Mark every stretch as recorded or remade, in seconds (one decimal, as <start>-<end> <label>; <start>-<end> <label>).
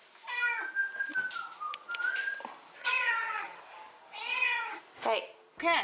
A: 0.0-2.8 recorded; 2.8-3.6 remade; 3.6-4.3 recorded; 4.3-4.8 remade; 4.8-5.8 recorded